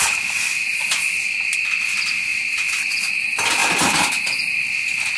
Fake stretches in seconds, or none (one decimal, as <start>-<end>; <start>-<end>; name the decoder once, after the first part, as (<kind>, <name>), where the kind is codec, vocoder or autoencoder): none